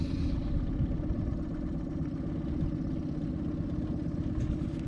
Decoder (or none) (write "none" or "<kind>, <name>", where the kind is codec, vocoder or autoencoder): none